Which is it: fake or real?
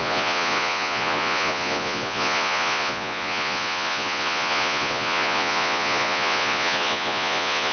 fake